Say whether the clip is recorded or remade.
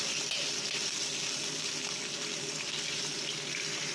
recorded